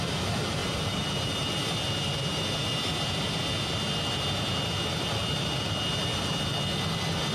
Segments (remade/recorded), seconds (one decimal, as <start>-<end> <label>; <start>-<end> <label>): 0.0-7.3 recorded